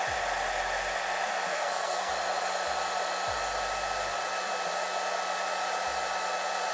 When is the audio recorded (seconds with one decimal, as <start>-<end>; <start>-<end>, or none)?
0.0-1.5; 2.1-6.7